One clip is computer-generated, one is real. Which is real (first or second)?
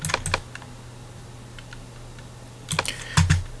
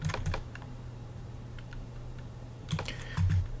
first